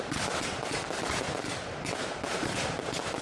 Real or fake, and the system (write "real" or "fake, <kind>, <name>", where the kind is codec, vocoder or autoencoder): real